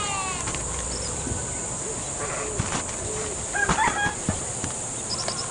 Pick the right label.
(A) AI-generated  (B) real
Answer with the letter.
B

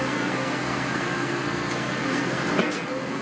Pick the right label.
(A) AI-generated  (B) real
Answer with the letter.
A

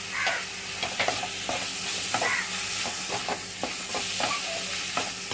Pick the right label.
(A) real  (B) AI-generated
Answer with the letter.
A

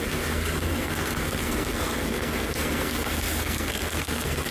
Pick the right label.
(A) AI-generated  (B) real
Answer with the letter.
A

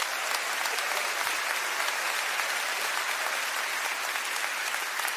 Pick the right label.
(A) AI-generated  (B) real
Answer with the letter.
B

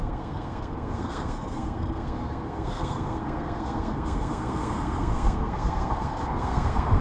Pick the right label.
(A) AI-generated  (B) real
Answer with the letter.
A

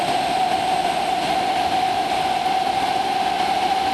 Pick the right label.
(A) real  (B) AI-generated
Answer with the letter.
A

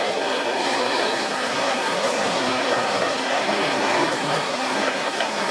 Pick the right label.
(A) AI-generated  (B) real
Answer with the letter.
A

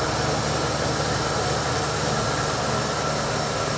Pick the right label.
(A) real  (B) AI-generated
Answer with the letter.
A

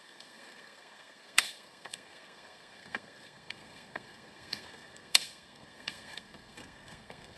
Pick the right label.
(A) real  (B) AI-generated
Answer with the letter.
B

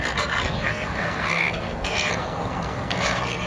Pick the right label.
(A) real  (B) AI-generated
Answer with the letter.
B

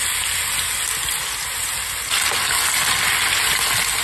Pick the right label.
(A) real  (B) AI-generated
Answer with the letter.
A